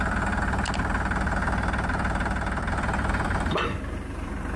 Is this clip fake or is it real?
fake